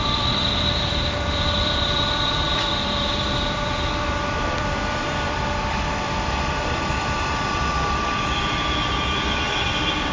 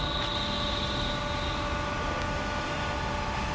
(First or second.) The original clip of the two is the second